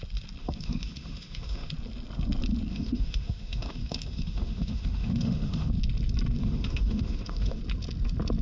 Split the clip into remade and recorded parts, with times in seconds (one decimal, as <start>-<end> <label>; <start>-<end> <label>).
0.0-0.4 recorded; 0.4-1.7 remade; 1.7-2.7 recorded; 2.7-5.7 remade; 5.7-6.4 recorded; 6.4-7.6 remade; 7.6-8.4 recorded